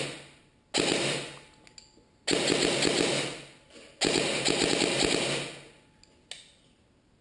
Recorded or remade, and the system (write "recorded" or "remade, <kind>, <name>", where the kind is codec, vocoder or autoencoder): recorded